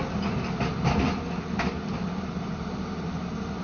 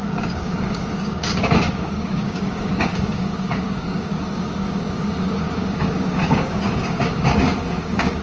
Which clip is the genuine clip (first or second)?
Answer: first